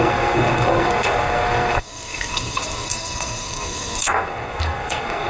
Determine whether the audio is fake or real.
fake